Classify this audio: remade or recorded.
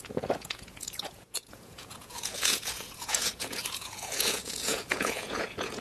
remade